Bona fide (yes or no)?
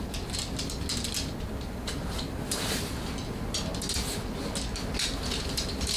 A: yes